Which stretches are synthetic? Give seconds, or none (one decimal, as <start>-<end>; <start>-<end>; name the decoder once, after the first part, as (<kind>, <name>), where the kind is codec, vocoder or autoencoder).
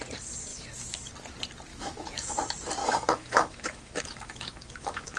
0.5-1.1 (autoencoder, DAC-VAE); 1.7-2.3; 2.8-5.2